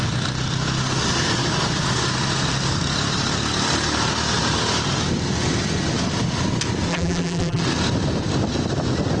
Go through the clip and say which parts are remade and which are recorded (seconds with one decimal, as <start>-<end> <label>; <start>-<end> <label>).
0.0-6.9 recorded; 6.9-7.6 remade; 7.6-9.2 recorded